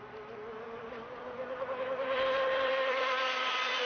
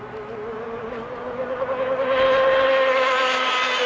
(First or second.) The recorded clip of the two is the second